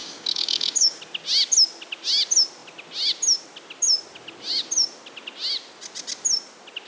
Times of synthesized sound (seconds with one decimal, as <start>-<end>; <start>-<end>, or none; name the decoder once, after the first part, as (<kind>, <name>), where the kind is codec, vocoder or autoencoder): 0.0-1.0 (codec, DAC)